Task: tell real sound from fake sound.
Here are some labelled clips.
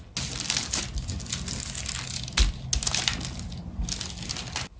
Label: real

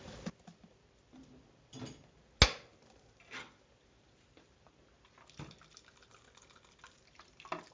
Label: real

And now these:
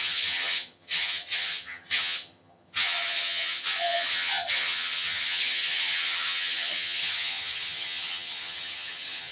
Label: fake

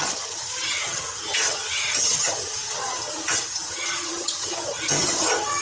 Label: fake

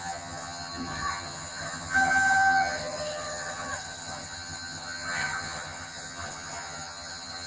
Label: fake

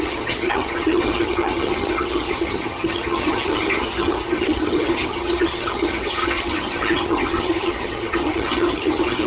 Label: fake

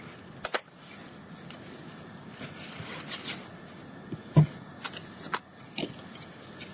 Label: real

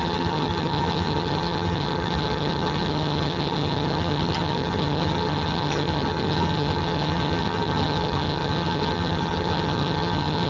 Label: fake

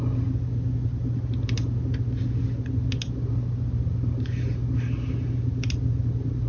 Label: real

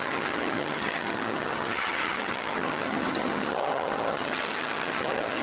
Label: fake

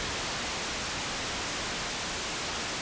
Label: real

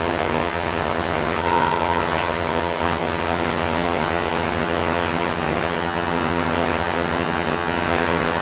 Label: fake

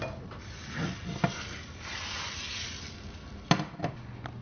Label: real